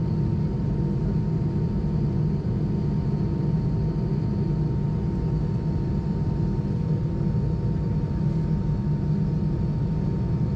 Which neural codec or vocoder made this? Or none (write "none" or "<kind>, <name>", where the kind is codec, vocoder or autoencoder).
none